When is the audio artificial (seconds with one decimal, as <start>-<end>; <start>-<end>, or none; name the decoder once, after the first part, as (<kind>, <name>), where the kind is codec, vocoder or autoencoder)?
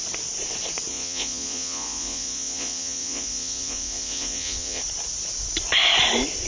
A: 0.9-4.8 (vocoder, Vocos)